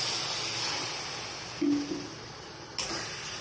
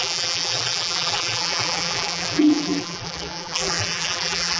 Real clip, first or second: first